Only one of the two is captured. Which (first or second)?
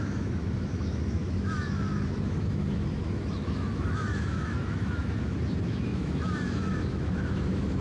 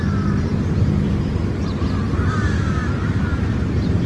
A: second